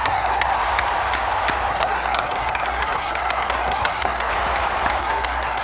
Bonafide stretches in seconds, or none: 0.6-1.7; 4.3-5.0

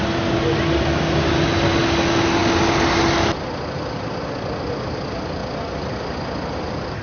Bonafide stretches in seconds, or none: 0.0-7.0

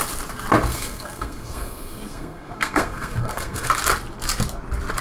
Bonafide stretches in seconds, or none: 0.0-0.7; 3.7-5.0

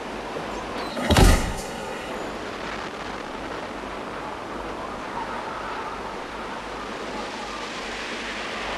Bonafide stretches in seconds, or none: 0.0-0.9; 2.1-8.8

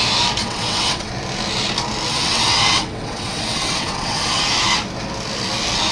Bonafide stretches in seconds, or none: 0.0-0.4; 1.1-2.1; 4.4-5.9

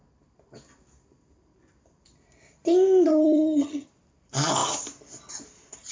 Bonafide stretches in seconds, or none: 0.0-3.1; 3.9-5.9